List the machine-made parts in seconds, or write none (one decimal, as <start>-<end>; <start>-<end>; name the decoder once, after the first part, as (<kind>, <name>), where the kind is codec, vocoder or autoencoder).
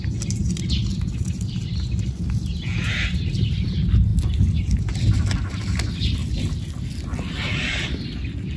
none